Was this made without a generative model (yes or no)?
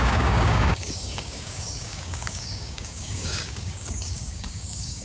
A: no